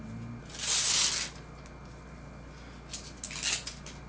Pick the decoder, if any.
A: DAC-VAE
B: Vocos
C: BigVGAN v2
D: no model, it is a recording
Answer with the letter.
D